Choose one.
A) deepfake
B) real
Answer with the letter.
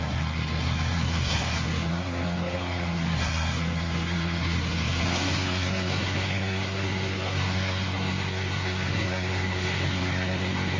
A